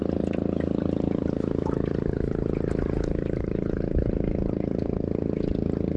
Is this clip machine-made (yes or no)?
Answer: no